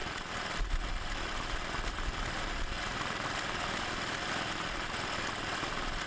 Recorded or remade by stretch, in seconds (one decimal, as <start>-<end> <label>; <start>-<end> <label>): 0.0-6.1 recorded